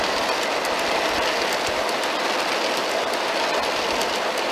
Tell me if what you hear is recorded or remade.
recorded